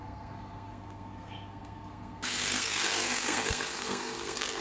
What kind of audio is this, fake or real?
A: fake